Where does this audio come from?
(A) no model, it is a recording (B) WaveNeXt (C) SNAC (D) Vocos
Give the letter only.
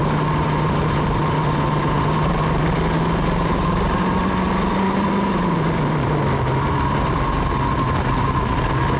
A